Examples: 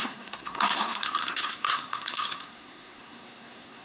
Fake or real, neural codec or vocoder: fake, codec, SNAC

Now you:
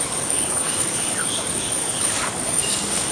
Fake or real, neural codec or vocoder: fake, codec, DAC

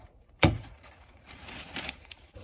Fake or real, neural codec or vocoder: fake, vocoder, Vocos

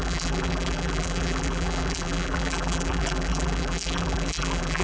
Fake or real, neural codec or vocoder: fake, vocoder, BigVGAN v2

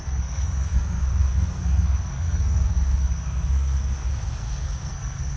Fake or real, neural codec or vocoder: fake, codec, SNAC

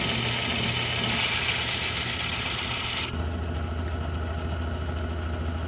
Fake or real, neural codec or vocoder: real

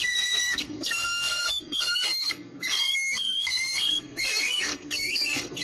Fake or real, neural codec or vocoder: fake, codec, SNAC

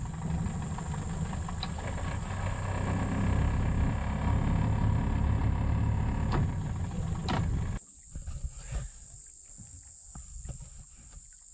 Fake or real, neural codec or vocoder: real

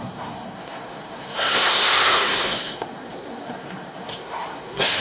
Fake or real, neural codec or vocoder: fake, codec, SNAC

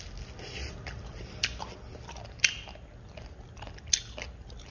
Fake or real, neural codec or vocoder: real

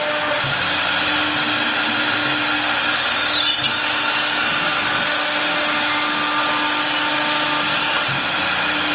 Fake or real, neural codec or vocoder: real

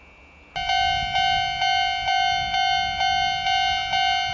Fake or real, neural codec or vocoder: real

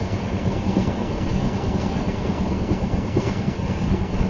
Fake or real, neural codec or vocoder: fake, codec, SNAC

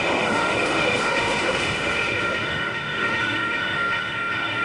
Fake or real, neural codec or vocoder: fake, autoencoder, DAC-VAE